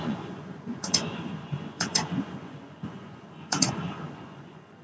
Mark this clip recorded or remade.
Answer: remade